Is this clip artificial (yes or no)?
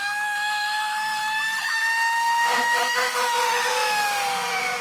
yes